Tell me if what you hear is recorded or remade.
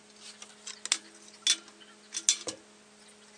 recorded